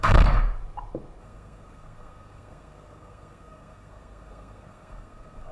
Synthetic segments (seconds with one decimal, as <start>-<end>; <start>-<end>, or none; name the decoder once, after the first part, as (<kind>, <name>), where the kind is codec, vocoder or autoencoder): 0.0-0.4 (codec, SNAC); 1.2-5.5